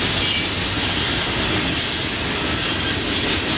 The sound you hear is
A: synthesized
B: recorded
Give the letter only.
B